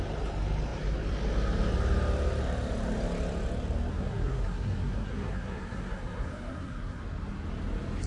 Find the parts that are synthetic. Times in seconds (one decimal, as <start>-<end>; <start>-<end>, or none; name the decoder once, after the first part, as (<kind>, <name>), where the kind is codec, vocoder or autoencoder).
3.9-7.0 (codec, SNAC)